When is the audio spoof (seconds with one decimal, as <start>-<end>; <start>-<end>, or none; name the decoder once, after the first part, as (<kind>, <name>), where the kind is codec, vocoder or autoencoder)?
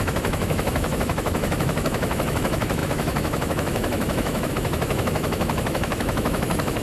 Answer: 0.0-6.8 (autoencoder, DAC-VAE)